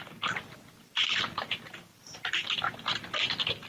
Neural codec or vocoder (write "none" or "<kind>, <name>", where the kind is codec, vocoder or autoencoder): none